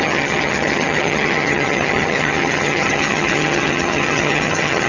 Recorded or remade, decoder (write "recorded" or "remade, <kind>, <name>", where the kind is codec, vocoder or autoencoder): remade, vocoder, HiFi-GAN